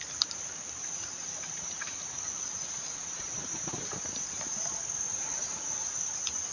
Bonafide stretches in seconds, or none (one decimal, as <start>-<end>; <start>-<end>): 0.0-0.8; 3.8-5.1; 6.1-6.5